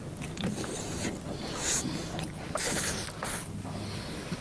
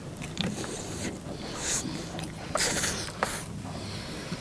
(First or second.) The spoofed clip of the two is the second